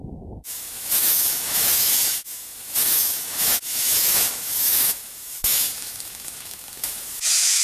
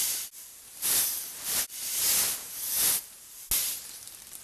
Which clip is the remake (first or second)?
first